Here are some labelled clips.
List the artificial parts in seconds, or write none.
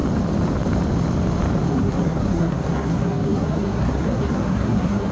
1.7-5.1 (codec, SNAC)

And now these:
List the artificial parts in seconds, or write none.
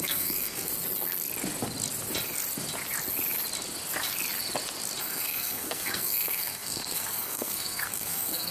0.0-0.7 (codec, SNAC); 5.0-8.5